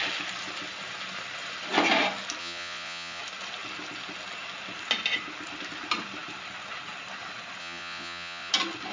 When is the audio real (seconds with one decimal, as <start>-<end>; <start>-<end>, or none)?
0.0-2.4; 3.2-7.6; 8.5-8.9